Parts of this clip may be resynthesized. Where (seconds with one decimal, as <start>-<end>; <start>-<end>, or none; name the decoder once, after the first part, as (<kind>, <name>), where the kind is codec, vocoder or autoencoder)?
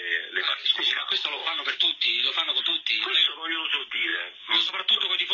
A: 1.4-2.6 (codec, DAC)